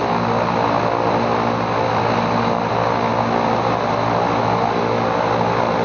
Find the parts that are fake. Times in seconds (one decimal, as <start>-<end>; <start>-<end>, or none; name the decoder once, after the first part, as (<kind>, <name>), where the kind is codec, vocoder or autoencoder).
none